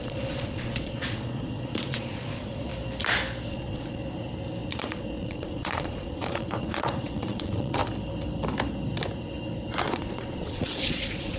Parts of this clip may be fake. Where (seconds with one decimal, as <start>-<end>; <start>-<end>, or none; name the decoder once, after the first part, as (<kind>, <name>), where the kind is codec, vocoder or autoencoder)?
0.0-2.7 (vocoder, Vocos); 3.5-4.0; 4.6-7.8; 9.8-11.4